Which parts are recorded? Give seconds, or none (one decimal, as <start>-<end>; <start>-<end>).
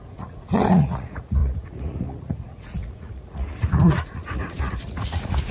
none